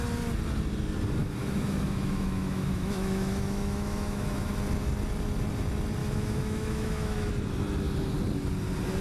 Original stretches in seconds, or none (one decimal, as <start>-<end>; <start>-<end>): 0.0-1.2; 4.5-6.0; 7.3-9.0